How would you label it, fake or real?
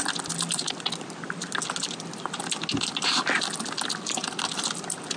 real